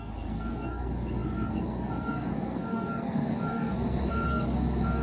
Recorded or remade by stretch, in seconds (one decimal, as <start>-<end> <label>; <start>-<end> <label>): 0.0-5.0 remade